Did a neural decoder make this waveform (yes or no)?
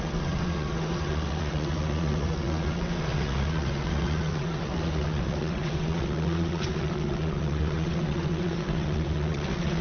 yes